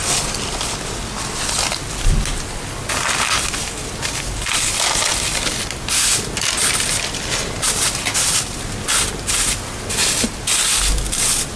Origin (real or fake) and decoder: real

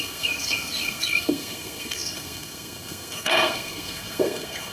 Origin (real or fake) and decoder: fake, codec, SNAC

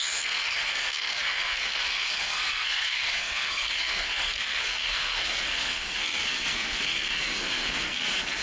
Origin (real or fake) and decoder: fake, codec, SNAC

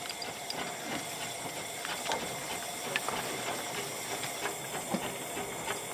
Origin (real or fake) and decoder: real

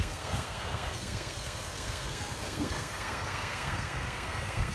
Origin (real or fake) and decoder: fake, codec, SNAC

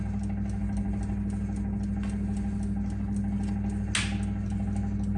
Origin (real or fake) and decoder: real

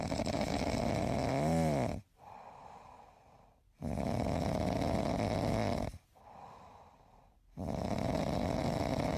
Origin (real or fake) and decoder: real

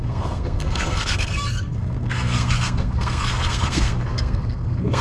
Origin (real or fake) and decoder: fake, codec, SNAC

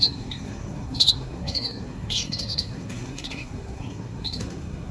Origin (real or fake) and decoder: fake, codec, SNAC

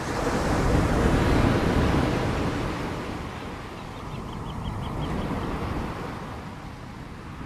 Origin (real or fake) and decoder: real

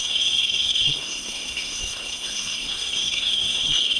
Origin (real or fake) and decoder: fake, codec, SNAC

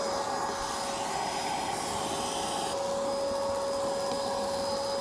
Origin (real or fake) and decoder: real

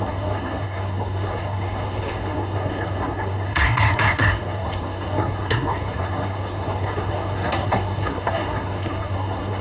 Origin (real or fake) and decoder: fake, codec, SNAC